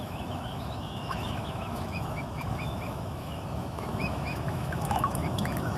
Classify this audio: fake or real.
fake